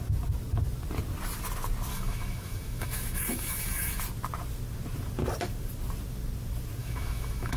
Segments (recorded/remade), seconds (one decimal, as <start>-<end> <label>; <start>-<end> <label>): 0.0-1.9 recorded; 1.9-4.0 remade; 4.0-6.8 recorded; 6.8-7.6 remade